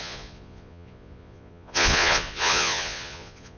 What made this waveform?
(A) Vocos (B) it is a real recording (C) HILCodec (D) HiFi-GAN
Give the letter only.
A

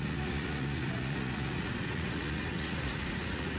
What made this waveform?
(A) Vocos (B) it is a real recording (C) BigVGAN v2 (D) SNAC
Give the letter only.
A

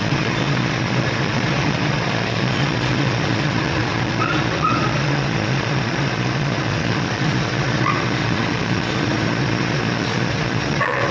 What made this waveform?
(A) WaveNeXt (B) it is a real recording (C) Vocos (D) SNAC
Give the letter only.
C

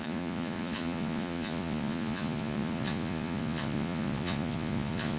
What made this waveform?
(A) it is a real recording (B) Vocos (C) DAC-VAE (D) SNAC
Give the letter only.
B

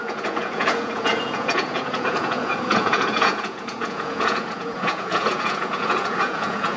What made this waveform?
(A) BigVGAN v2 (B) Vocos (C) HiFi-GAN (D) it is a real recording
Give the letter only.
B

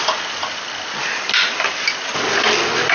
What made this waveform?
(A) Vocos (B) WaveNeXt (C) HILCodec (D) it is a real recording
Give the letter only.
D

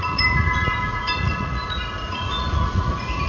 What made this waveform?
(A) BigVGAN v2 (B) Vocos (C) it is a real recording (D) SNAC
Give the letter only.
B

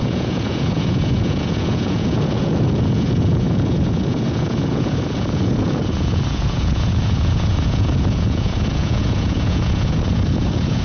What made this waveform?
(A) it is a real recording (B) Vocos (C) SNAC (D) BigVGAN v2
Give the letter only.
B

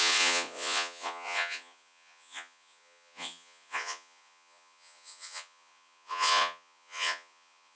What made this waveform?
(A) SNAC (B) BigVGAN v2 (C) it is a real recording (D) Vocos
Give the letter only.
D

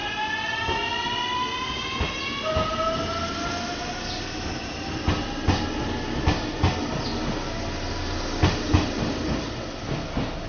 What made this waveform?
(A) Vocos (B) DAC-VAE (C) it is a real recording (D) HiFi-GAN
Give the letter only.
C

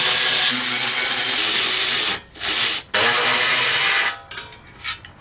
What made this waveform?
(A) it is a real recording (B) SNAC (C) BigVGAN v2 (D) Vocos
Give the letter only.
A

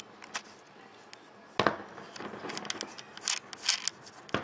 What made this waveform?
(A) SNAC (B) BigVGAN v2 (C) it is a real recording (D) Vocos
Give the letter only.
C